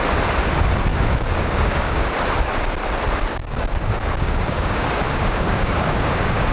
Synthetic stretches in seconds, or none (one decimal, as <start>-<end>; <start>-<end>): 0.9-2.1; 3.3-6.5